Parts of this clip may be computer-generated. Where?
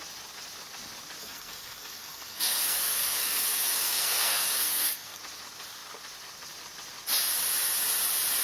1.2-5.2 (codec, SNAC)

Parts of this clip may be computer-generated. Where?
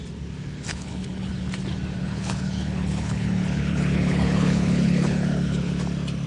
0.7-1.3 (codec, HILCodec); 2.0-5.8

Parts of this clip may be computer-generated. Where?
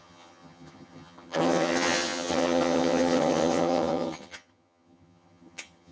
0.0-5.9 (vocoder, HiFi-GAN)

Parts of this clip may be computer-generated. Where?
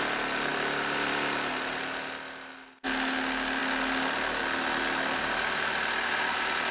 none